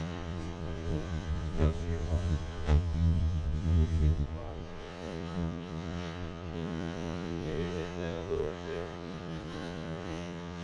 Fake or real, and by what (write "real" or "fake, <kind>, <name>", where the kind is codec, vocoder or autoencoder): fake, vocoder, Vocos